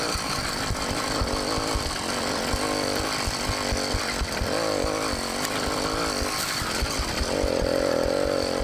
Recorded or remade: recorded